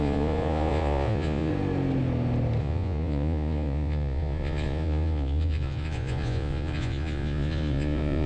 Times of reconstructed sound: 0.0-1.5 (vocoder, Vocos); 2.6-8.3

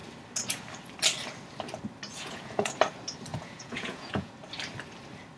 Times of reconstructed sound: 2.1-2.7 (vocoder, Vocos); 3.3-4.3